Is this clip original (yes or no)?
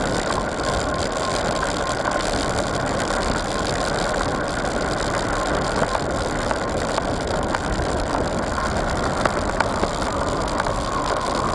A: yes